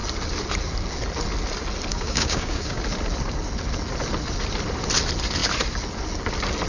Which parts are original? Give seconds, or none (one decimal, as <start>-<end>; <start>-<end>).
0.0-1.9; 2.8-6.7

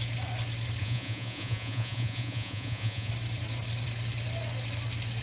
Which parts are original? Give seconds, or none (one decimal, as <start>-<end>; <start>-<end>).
0.0-0.8; 3.1-5.2

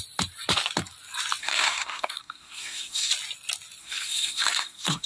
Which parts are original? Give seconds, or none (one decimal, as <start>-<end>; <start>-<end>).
0.0-1.4; 3.1-3.8

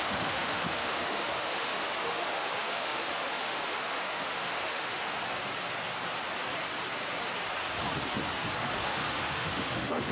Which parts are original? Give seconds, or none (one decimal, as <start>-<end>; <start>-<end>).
5.2-8.9